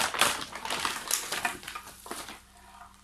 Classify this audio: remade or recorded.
remade